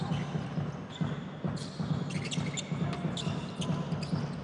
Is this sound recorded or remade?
recorded